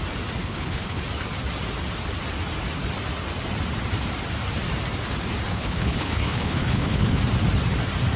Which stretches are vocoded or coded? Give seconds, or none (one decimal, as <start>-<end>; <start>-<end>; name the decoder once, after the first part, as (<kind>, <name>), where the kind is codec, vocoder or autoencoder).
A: 0.4-1.0 (codec, HILCodec); 5.5-7.2